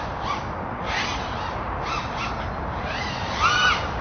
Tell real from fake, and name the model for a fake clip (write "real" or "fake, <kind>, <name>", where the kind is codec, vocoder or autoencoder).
real